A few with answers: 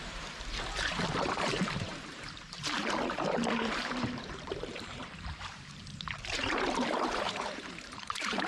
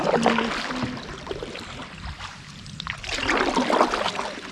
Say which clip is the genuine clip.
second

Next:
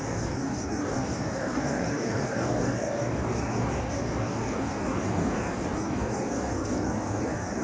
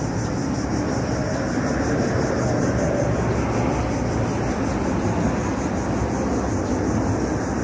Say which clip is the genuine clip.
second